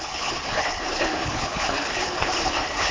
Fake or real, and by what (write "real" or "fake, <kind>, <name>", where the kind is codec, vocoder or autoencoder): fake, codec, HILCodec